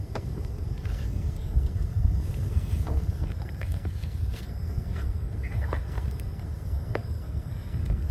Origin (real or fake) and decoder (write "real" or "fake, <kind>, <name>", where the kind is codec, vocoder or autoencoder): fake, codec, SNAC